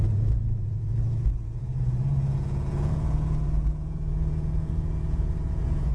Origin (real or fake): fake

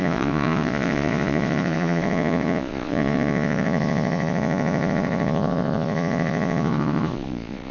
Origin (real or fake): fake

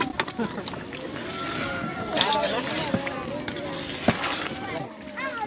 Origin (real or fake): real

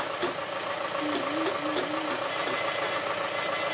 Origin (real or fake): real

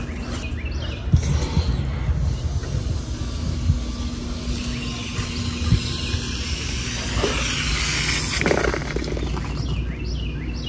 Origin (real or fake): real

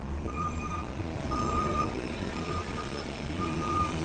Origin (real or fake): fake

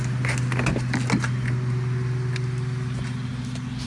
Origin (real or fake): real